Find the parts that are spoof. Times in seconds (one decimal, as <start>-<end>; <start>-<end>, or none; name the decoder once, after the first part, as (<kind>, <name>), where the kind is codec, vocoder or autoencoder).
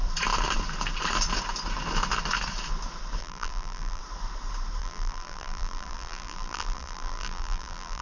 3.2-4.0 (vocoder, BigVGAN v2); 4.8-8.0